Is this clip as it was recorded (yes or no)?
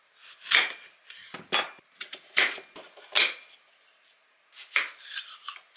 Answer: yes